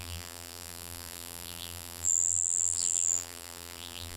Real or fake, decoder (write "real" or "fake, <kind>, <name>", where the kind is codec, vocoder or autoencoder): fake, vocoder, BigVGAN v2